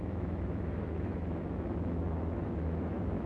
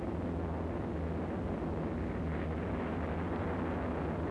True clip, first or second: second